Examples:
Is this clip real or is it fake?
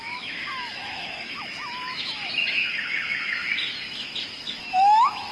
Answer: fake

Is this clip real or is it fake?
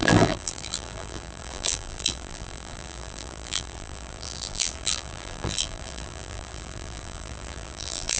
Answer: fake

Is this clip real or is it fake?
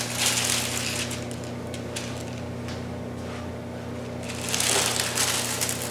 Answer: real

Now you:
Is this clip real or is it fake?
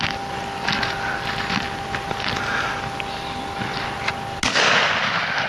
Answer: real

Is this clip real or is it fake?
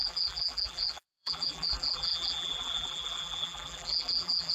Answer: fake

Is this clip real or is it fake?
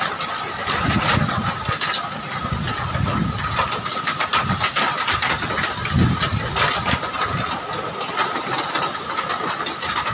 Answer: real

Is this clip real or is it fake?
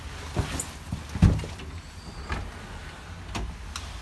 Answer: real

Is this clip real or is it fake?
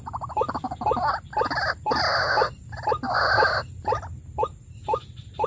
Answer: real